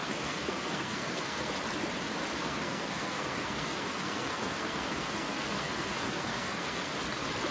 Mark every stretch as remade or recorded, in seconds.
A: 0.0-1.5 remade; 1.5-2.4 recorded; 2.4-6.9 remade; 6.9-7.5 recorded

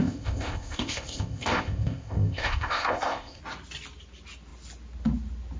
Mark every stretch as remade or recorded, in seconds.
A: 0.0-3.4 remade; 3.4-5.6 recorded

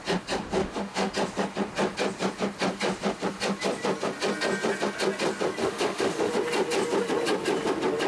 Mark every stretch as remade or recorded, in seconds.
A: 0.0-0.6 recorded; 0.6-1.1 remade; 1.1-5.6 recorded; 5.6-6.3 remade; 6.3-8.1 recorded